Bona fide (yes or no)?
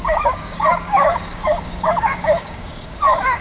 no